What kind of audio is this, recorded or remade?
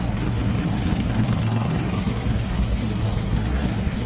remade